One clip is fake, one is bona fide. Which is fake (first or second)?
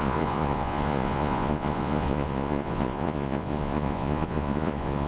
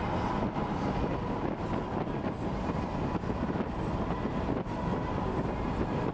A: first